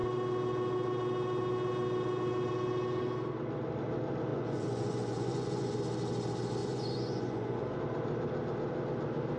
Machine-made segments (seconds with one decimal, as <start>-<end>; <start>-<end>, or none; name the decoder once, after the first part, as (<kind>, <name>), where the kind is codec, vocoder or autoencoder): 4.3-5.8 (vocoder, Vocos); 6.6-7.8

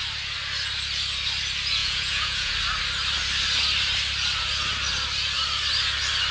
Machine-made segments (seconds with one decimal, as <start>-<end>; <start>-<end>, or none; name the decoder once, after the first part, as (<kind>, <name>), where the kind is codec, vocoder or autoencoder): 1.8-2.5 (vocoder, Vocos)

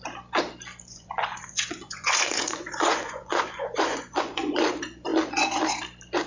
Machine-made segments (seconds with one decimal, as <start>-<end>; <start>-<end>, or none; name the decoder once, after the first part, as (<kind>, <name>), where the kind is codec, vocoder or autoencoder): 0.9-4.6 (vocoder, Vocos)